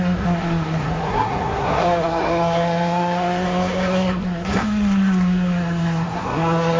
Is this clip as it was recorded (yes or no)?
no